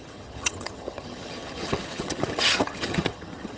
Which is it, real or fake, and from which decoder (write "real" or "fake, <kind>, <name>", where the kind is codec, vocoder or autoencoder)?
fake, vocoder, HiFi-GAN